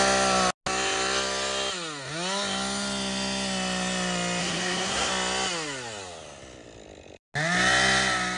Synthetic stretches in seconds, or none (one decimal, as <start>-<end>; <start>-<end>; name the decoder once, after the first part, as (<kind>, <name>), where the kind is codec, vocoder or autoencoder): 4.4-5.1 (codec, SNAC)